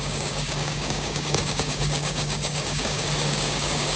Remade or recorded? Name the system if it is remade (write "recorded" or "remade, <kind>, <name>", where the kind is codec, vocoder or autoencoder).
remade, codec, DAC